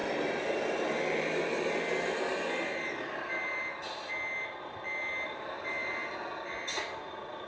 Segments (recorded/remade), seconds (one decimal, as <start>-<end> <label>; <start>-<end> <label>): 0.0-7.5 recorded

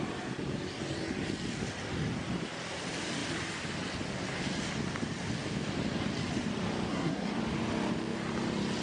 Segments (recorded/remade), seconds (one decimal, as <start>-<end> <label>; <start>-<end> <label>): 0.0-6.9 recorded; 6.9-7.4 remade; 7.4-8.8 recorded

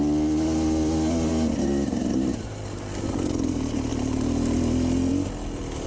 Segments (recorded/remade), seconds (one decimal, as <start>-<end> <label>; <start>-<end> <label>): 0.0-5.9 recorded

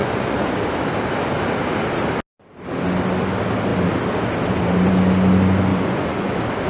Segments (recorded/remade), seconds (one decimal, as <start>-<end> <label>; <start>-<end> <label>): 0.0-0.5 remade; 0.5-5.7 recorded; 5.7-6.3 remade; 6.3-6.7 recorded

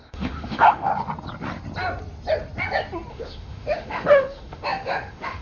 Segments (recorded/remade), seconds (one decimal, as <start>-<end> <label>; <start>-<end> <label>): 0.0-0.9 remade; 0.9-3.1 recorded; 3.1-5.4 remade